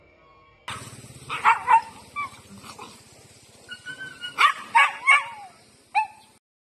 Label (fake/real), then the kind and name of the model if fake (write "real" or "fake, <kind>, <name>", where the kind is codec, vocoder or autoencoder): real